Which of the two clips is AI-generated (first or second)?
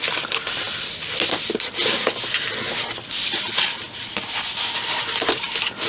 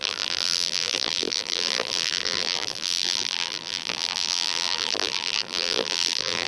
second